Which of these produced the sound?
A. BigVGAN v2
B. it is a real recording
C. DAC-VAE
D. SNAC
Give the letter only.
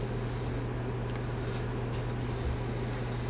B